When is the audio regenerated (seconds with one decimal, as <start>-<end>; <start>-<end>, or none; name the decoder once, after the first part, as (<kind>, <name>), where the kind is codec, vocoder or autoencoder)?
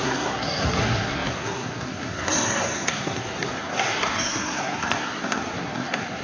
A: 0.0-6.2 (codec, SNAC)